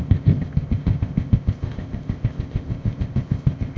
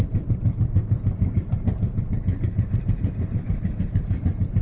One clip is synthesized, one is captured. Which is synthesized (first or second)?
first